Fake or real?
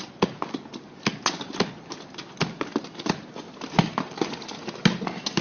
real